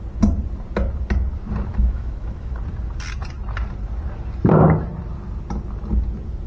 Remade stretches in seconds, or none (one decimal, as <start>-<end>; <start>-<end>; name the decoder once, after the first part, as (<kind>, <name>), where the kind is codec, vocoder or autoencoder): 1.7-2.5 (autoencoder, DAC-VAE)